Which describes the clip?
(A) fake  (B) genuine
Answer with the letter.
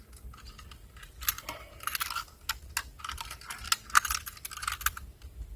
B